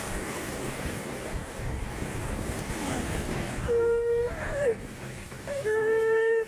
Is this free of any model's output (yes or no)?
no